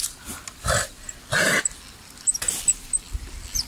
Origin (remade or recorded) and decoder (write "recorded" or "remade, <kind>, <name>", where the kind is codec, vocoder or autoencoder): recorded